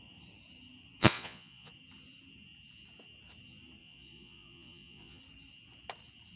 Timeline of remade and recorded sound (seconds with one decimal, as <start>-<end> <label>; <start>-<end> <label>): 0.0-1.0 recorded; 1.0-1.7 remade; 1.7-3.8 recorded; 3.8-5.2 remade; 5.2-6.4 recorded